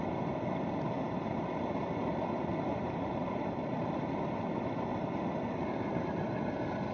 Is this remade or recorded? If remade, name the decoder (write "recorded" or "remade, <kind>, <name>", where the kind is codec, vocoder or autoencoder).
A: remade, vocoder, BigVGAN v2